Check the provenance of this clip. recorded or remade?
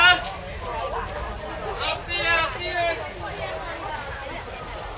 recorded